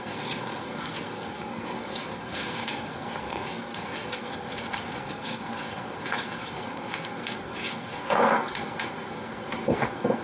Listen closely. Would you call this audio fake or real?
fake